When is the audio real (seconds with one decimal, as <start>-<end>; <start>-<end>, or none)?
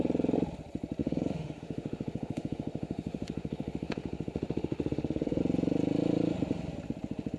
0.0-1.0; 5.4-7.4